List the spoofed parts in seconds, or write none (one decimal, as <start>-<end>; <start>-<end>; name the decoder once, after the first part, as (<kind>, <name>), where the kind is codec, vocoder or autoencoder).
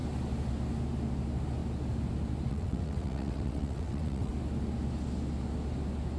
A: 2.5-4.3 (vocoder, WaveNeXt)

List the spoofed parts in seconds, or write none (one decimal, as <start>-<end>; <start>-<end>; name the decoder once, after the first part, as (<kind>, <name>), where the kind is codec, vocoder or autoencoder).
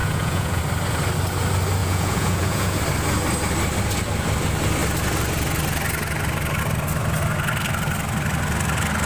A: 0.0-0.6 (vocoder, Vocos); 1.8-2.8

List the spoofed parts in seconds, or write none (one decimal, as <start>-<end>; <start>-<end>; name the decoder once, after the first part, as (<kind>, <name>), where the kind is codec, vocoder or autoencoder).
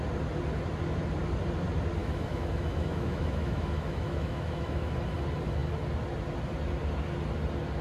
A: 2.0-4.9 (autoencoder, DAC-VAE)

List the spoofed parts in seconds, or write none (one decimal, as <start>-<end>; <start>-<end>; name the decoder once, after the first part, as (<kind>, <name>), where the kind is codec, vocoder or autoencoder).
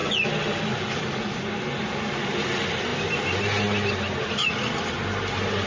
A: none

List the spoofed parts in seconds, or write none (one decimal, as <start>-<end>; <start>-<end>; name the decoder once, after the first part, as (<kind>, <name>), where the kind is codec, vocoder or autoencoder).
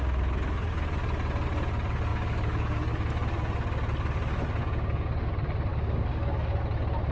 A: 2.1-2.9 (codec, DAC); 4.6-5.3; 5.7-6.6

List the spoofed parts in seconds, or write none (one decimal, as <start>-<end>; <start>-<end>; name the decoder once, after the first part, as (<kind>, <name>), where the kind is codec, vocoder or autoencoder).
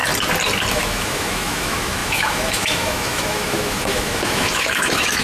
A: 0.7-5.2 (autoencoder, DAC-VAE)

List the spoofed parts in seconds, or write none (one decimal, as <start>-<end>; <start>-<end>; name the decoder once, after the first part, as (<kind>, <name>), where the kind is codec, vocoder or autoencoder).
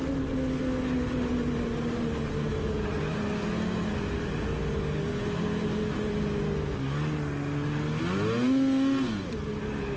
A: none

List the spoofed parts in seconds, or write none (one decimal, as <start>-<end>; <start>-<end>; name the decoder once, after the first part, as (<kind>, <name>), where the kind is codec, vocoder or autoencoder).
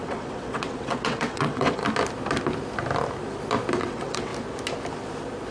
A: 0.0-1.8 (vocoder, WaveNeXt); 3.8-4.3